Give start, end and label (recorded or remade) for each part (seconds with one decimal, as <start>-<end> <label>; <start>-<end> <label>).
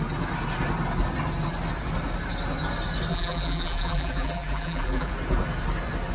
0.0-3.1 recorded; 3.1-5.1 remade; 5.1-6.1 recorded